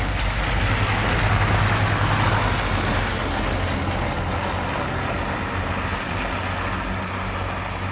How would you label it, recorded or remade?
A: recorded